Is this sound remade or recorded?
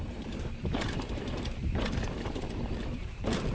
remade